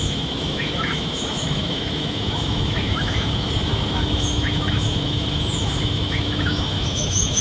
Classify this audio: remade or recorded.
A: remade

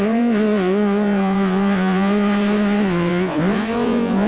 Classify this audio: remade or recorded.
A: remade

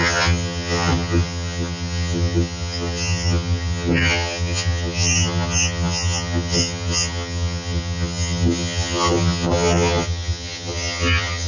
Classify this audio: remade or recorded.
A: remade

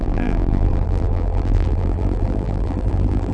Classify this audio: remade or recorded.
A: remade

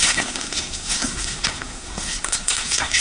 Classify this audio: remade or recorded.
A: remade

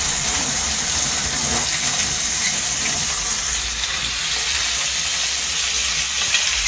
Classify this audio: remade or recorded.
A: recorded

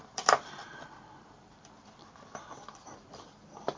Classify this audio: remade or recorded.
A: remade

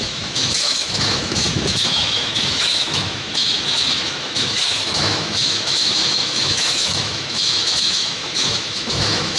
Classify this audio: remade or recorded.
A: remade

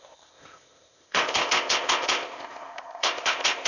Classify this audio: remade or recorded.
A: remade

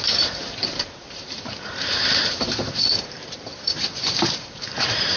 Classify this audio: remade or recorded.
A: remade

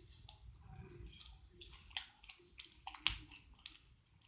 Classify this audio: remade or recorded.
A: recorded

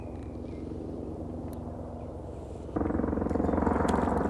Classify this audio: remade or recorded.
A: recorded